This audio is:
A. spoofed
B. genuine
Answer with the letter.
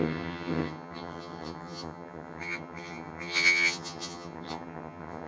A